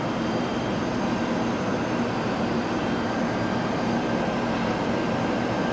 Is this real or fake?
fake